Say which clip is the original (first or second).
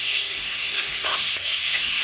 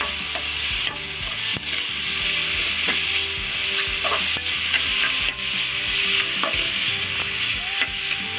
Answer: second